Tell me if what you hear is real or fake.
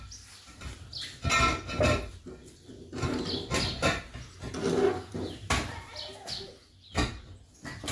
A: real